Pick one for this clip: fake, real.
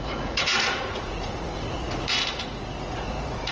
fake